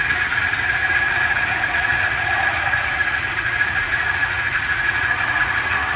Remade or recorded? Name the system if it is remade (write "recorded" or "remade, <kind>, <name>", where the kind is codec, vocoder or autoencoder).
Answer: remade, vocoder, Vocos